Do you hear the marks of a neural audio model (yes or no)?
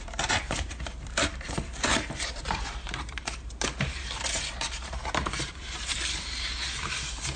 yes